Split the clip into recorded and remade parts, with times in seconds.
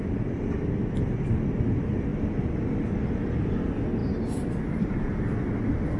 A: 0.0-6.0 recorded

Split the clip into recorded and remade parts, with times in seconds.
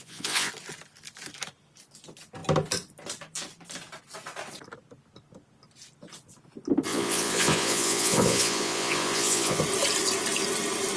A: 0.0-0.5 remade; 0.5-6.9 recorded; 6.9-9.6 remade; 9.6-11.0 recorded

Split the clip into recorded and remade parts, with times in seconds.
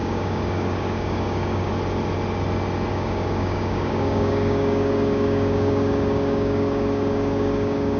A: 0.0-1.7 remade; 1.7-2.9 recorded; 2.9-8.0 remade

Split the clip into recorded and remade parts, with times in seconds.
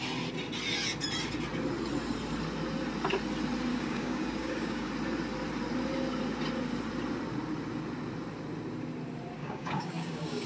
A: 0.0-3.7 recorded; 3.7-4.9 remade; 4.9-9.4 recorded; 9.4-10.5 remade